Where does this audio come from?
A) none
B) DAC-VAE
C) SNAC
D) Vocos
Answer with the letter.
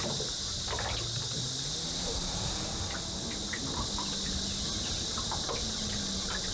A